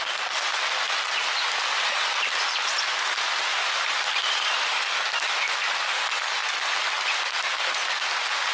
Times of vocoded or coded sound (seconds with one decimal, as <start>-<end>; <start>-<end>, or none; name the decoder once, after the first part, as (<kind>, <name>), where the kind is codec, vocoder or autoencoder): 1.7-2.3 (vocoder, BigVGAN v2); 3.5-4.8